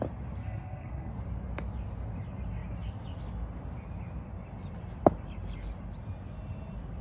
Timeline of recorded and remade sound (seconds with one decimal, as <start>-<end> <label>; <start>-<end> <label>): 0.0-0.4 recorded; 0.4-1.1 remade; 1.1-7.0 recorded